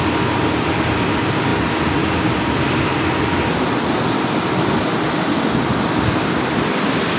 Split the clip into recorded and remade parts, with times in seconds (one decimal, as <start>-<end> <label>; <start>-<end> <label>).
0.0-7.2 recorded